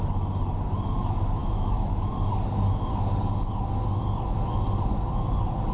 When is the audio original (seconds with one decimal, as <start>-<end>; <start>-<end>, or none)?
0.0-1.4; 2.1-5.7